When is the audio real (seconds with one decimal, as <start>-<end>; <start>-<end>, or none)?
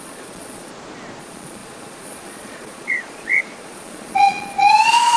0.7-1.2